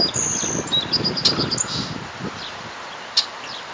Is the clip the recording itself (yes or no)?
yes